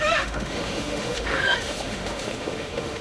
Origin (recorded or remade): remade